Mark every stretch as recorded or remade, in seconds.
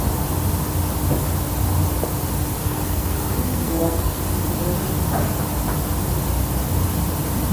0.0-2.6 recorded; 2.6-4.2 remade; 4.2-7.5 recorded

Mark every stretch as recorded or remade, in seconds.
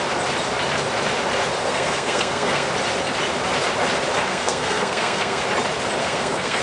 0.0-1.6 recorded; 1.6-2.7 remade; 2.7-4.3 recorded; 4.3-5.4 remade; 5.4-6.0 recorded; 6.0-6.6 remade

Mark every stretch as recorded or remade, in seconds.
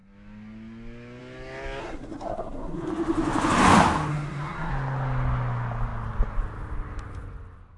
0.0-1.8 recorded; 1.8-2.9 remade; 2.9-4.1 recorded; 4.1-4.7 remade; 4.7-7.8 recorded